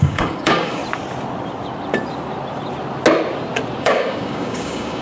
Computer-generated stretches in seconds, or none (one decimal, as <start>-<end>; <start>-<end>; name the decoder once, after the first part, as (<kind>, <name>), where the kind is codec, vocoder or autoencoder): 0.0-0.8 (codec, DAC); 3.8-5.0